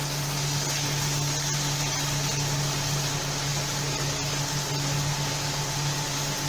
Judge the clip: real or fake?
real